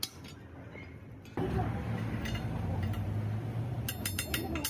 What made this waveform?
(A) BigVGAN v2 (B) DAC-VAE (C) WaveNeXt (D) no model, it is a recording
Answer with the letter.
D